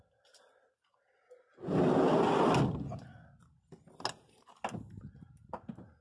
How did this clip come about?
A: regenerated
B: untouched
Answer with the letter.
B